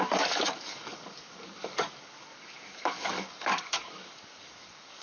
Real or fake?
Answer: fake